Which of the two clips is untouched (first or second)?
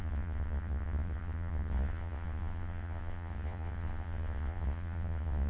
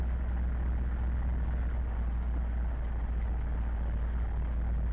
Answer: second